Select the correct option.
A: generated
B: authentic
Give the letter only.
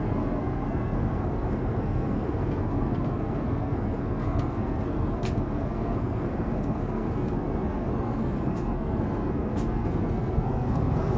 A